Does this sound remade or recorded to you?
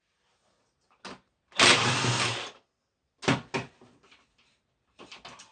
recorded